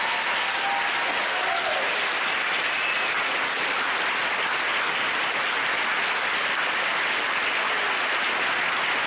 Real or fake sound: real